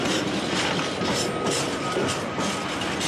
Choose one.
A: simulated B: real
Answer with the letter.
B